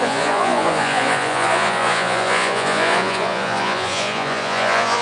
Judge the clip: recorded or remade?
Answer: remade